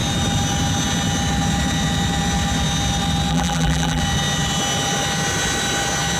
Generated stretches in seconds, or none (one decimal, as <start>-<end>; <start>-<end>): 3.3-4.0